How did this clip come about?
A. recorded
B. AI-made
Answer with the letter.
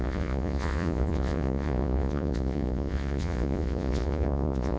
B